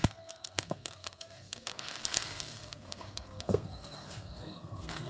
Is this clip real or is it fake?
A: fake